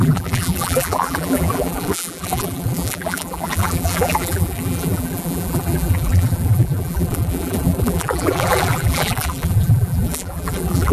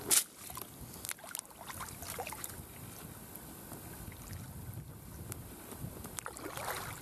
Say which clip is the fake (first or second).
first